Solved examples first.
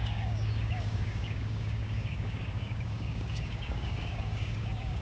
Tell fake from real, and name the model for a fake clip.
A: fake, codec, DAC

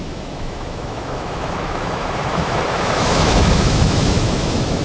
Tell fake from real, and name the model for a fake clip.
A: fake, autoencoder, DAC-VAE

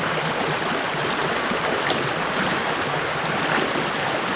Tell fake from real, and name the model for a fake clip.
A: real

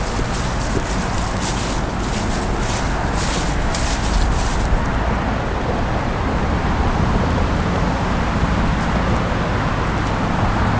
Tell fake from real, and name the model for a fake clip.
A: real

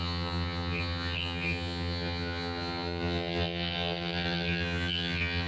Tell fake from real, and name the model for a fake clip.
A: fake, vocoder, HiFi-GAN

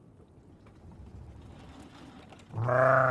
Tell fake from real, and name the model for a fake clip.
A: real